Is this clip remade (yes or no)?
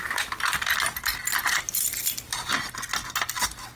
no